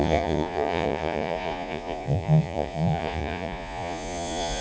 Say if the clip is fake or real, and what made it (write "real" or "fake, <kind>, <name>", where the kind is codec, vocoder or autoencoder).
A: fake, vocoder, Vocos